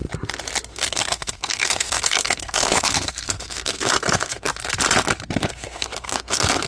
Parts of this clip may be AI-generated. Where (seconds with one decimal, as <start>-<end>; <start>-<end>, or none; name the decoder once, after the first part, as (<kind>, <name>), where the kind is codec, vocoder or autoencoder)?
0.7-4.5 (codec, SNAC); 5.4-6.7